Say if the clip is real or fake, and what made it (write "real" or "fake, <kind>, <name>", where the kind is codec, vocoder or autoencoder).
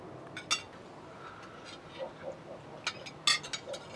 real